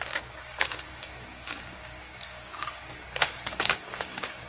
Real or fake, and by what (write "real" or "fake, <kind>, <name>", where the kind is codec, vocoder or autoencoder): fake, codec, DAC